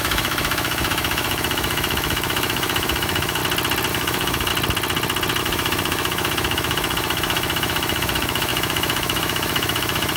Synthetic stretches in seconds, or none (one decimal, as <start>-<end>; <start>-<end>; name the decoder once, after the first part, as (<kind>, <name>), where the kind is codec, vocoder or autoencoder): 0.0-3.4 (autoencoder, DAC-VAE); 3.9-4.5; 5.4-10.2